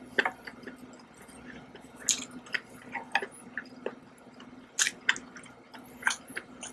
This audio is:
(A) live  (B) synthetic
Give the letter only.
A